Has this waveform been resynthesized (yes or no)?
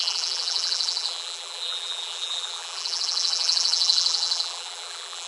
yes